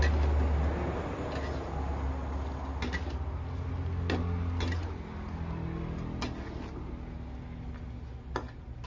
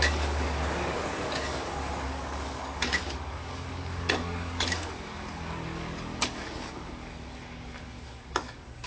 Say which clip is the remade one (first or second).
second